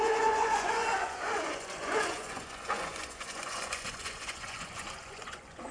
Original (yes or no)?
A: no